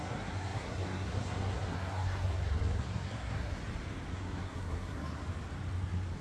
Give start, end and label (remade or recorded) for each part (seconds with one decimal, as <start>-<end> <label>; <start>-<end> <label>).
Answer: 0.0-3.6 remade; 3.6-4.1 recorded; 4.1-5.2 remade; 5.2-6.2 recorded